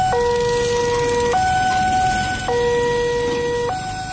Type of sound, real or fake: real